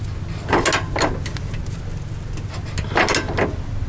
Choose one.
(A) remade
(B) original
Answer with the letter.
B